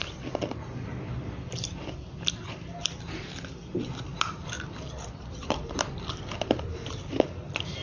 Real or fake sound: fake